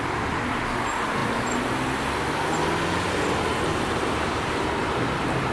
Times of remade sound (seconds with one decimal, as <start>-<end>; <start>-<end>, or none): 3.7-5.5